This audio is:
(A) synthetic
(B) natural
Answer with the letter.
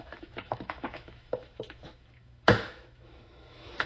A